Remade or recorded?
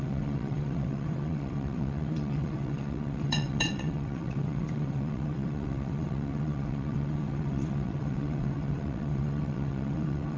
remade